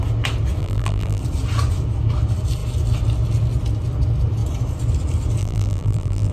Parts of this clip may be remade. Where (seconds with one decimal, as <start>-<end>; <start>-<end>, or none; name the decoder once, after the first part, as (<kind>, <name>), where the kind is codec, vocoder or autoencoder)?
0.6-1.2 (vocoder, BigVGAN v2); 5.4-6.3